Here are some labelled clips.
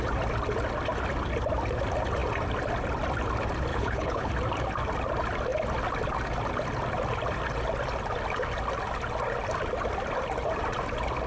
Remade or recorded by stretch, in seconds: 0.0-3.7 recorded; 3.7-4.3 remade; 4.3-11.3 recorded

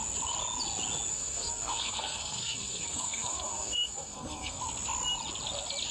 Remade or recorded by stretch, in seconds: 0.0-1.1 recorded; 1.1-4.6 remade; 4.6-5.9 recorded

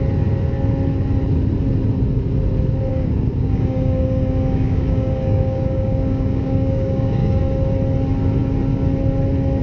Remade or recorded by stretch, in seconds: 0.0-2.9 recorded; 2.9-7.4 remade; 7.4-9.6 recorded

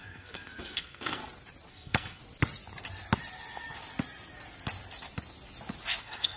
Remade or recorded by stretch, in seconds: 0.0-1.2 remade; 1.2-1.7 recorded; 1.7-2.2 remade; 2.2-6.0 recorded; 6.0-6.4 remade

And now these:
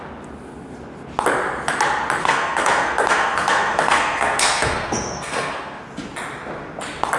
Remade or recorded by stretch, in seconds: 0.0-2.2 recorded; 2.2-5.8 remade; 5.8-7.2 recorded

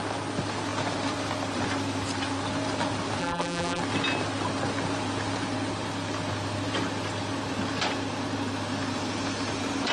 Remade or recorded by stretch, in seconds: 0.0-3.2 recorded; 3.2-3.8 remade; 3.8-9.9 recorded

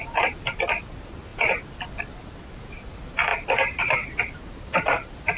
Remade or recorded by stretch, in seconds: 0.0-3.3 recorded; 3.3-3.8 remade; 3.8-5.4 recorded